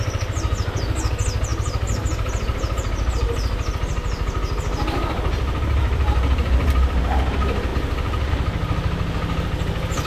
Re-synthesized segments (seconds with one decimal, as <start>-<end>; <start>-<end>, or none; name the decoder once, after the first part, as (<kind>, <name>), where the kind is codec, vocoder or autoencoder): 1.5-3.1 (vocoder, BigVGAN v2); 5.8-7.0